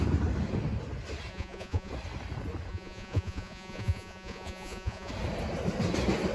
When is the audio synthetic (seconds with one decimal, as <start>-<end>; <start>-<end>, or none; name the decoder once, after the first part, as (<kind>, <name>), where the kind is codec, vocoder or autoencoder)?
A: 1.3-1.9 (vocoder, Vocos); 2.7-5.1